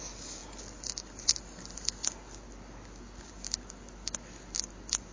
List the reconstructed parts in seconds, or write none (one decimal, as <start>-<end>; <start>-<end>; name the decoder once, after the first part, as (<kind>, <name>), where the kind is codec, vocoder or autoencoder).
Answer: none